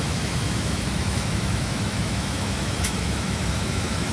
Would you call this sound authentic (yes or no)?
no